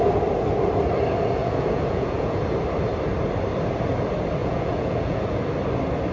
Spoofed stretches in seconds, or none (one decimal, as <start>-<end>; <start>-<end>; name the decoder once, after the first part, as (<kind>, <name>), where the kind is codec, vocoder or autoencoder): 1.4-2.4 (vocoder, Vocos); 4.4-5.3